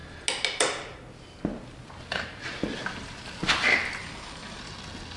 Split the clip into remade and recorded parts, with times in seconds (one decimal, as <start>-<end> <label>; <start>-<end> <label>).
0.0-4.0 recorded; 4.0-4.6 remade; 4.6-5.2 recorded